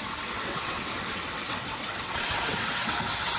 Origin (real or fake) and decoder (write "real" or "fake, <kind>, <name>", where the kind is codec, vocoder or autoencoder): fake, vocoder, WaveNeXt